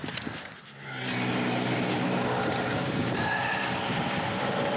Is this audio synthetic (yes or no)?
yes